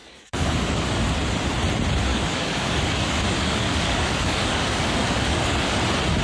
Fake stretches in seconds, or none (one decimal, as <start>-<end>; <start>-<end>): 0.0-1.1; 2.1-5.8